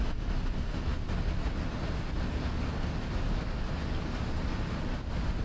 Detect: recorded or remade recorded